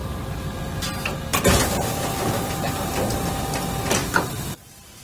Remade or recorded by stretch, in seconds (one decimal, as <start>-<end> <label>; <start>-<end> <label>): 0.0-0.8 remade; 0.8-1.3 recorded; 1.3-3.3 remade; 3.3-4.0 recorded; 4.0-5.0 remade